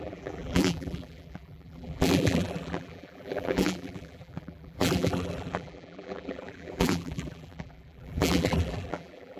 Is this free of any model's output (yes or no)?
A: no